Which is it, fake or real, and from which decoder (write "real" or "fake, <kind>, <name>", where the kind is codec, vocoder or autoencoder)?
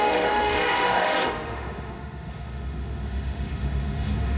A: fake, autoencoder, DAC-VAE